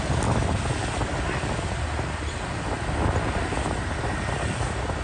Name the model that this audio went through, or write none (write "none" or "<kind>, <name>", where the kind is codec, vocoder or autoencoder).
none